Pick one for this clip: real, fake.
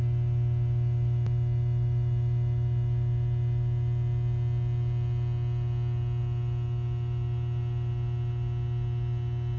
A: real